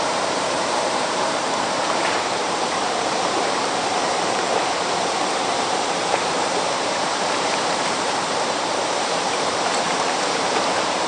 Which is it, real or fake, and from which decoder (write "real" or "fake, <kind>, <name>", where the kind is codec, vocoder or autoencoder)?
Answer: fake, vocoder, BigVGAN v2